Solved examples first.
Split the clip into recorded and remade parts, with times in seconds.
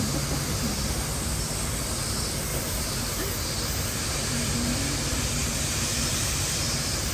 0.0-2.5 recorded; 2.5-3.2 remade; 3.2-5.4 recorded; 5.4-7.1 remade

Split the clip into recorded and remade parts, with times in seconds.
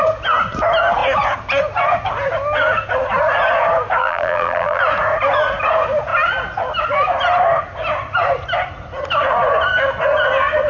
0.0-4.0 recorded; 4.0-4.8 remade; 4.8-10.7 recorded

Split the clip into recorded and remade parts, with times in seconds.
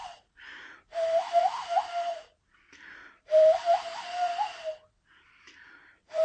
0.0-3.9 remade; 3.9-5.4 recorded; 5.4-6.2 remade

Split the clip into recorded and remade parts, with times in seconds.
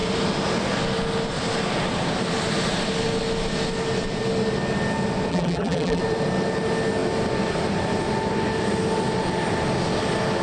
0.0-5.3 recorded; 5.3-6.0 remade; 6.0-10.4 recorded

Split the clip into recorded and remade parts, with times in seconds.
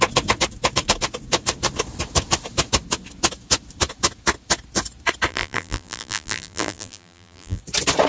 0.0-5.3 recorded; 5.3-7.6 remade; 7.6-8.1 recorded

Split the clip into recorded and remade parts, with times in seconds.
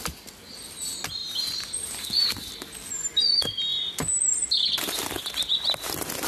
0.0-1.2 recorded; 1.2-2.4 remade; 2.4-6.3 recorded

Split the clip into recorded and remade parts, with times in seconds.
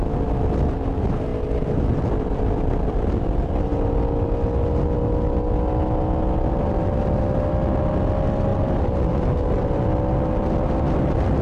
0.0-11.4 recorded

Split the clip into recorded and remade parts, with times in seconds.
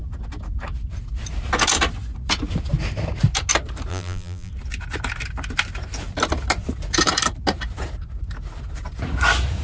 0.0-3.9 recorded; 3.9-4.5 remade; 4.5-9.6 recorded